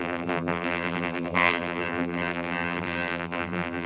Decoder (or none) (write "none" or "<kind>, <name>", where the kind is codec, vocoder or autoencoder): vocoder, BigVGAN v2